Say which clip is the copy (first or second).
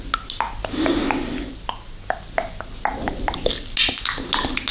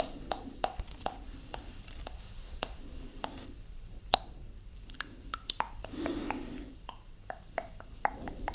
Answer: second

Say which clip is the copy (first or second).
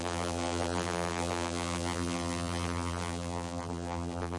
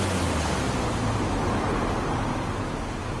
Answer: first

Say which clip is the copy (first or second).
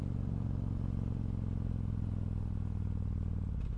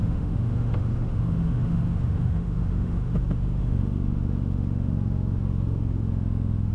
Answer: second